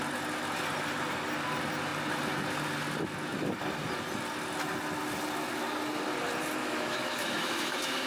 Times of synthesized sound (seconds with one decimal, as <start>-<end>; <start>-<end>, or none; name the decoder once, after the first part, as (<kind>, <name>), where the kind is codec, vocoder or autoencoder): 6.6-8.1 (autoencoder, DAC-VAE)